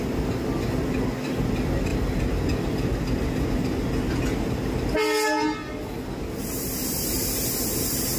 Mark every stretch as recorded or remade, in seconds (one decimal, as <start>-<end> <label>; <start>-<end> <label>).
0.0-8.2 recorded